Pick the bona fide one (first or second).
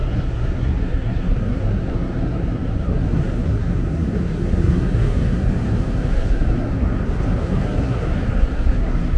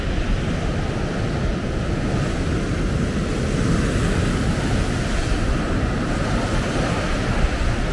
second